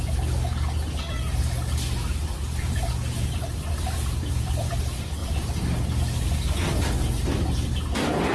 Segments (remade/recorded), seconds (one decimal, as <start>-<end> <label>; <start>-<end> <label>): 0.0-2.2 recorded; 2.2-2.9 remade; 2.9-3.5 recorded; 3.5-4.7 remade; 4.7-8.3 recorded